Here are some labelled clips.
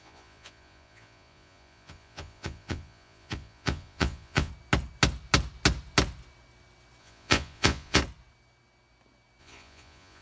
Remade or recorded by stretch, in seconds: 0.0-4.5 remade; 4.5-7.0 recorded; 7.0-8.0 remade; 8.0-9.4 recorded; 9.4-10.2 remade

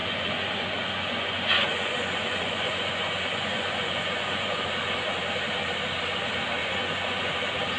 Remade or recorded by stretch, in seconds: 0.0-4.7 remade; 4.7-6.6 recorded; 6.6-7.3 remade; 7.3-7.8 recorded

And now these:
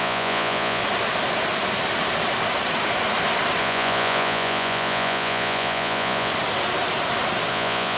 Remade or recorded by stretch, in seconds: 0.0-0.8 remade; 0.8-3.6 recorded; 3.6-6.3 remade; 6.3-7.5 recorded; 7.5-8.0 remade

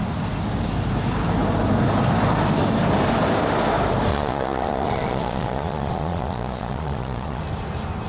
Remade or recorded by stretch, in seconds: 0.0-4.1 recorded; 4.1-7.4 remade; 7.4-8.1 recorded